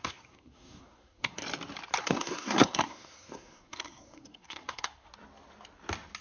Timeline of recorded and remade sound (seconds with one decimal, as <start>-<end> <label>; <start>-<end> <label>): 0.0-1.4 remade; 1.4-2.0 recorded; 2.0-5.1 remade; 5.1-6.2 recorded